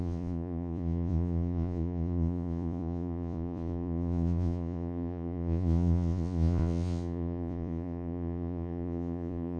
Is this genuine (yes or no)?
no